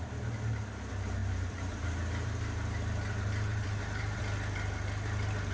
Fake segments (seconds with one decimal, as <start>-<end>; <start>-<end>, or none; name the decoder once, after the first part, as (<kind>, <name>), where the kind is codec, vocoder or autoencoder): 1.2-4.2 (vocoder, BigVGAN v2)